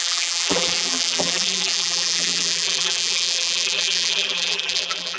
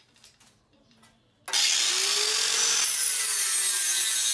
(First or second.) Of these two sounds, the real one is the second